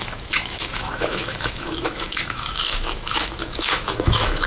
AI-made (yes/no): yes